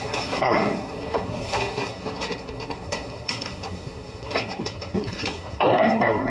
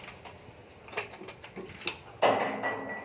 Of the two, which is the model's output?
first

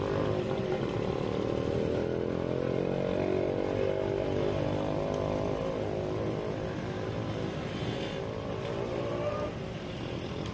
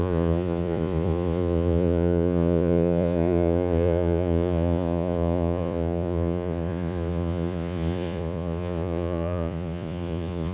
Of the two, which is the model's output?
second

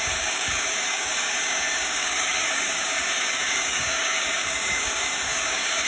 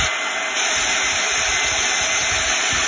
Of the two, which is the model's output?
first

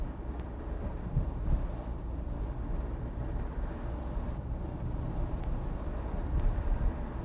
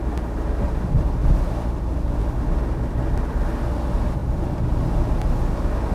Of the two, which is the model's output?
first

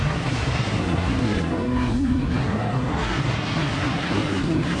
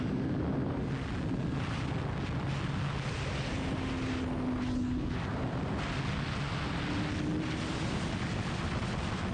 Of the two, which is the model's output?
first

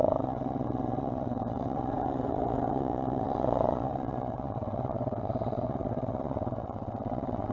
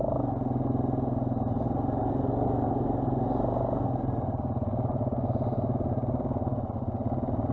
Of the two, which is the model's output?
first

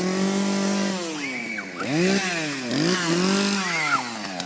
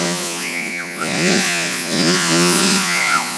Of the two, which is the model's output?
second